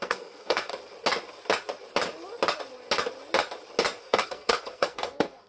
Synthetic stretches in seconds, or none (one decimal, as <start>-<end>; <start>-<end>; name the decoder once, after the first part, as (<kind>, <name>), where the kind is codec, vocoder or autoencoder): 0.0-0.7 (codec, SNAC); 4.0-5.5